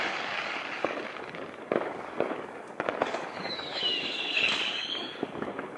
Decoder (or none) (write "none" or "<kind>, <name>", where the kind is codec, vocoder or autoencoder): codec, DAC